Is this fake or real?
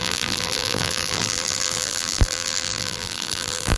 fake